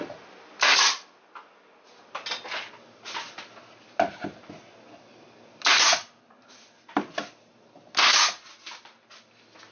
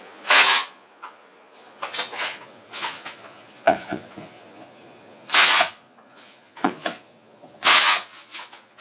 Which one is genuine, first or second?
first